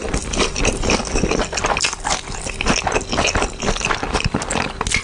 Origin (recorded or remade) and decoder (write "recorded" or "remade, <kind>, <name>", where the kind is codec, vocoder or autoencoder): recorded